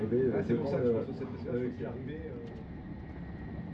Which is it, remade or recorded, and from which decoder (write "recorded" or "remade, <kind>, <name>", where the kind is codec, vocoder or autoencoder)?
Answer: recorded